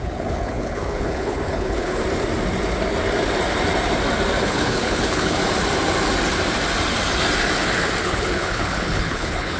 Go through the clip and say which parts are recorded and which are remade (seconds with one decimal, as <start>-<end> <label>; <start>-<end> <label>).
0.0-2.0 remade; 2.0-4.4 recorded; 4.4-5.4 remade; 5.4-8.0 recorded; 8.0-9.6 remade